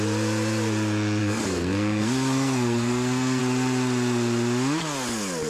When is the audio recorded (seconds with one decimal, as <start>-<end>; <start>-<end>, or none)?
0.0-1.2; 3.4-5.5